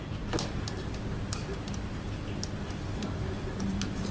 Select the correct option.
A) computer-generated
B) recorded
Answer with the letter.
B